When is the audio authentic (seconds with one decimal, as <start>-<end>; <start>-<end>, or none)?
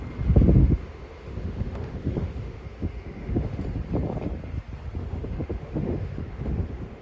0.0-0.6; 3.6-5.0